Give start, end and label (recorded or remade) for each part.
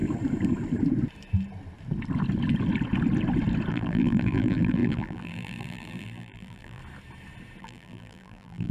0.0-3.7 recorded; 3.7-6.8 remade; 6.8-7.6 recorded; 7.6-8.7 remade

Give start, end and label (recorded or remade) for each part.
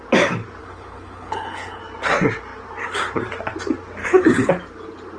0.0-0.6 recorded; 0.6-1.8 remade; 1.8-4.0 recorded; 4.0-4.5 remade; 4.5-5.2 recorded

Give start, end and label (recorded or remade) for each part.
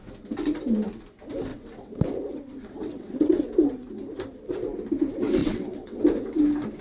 0.0-1.5 recorded; 1.5-3.4 remade; 3.4-5.4 recorded; 5.4-6.0 remade; 6.0-6.8 recorded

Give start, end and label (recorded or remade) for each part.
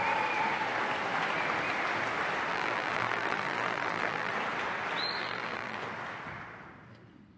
0.0-2.5 recorded; 2.5-4.3 remade; 4.3-5.2 recorded; 5.2-5.8 remade; 5.8-7.4 recorded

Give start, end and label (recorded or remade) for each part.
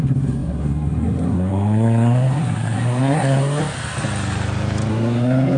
0.0-3.6 remade; 3.6-4.9 recorded; 4.9-5.6 remade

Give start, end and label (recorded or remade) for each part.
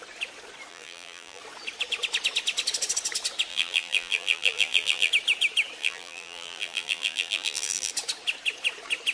0.0-0.7 recorded; 0.7-1.4 remade; 1.4-3.5 recorded; 3.5-5.1 remade; 5.1-5.8 recorded; 5.8-7.9 remade; 7.9-9.1 recorded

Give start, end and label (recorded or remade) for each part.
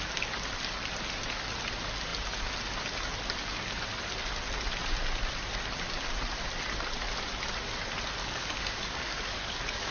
0.0-8.2 recorded; 8.2-9.9 remade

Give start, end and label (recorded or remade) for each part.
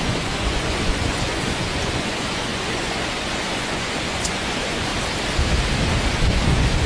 0.0-4.9 remade; 4.9-6.1 recorded; 6.1-6.9 remade